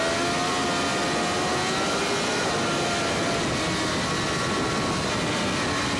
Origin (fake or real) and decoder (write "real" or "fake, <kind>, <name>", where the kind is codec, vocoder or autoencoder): real